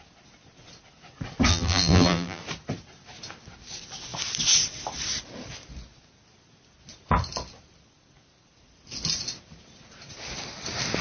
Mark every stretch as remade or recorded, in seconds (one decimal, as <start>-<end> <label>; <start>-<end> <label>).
0.0-1.5 recorded; 1.5-2.4 remade; 2.4-11.0 recorded